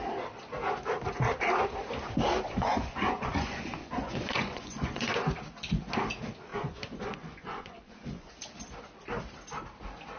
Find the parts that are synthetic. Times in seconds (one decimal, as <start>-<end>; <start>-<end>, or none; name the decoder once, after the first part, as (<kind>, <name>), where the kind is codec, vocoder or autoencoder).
2.5-5.1 (vocoder, Vocos); 6.5-8.3